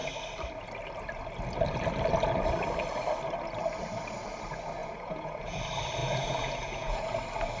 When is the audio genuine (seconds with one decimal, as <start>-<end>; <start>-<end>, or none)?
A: 0.0-4.8; 5.6-6.0; 7.1-7.6